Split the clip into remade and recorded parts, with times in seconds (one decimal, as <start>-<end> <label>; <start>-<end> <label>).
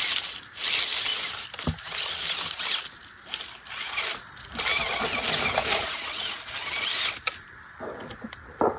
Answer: 0.0-5.6 recorded; 5.6-6.4 remade; 6.4-8.8 recorded